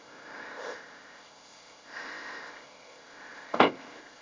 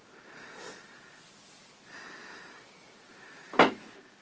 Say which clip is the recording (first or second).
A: second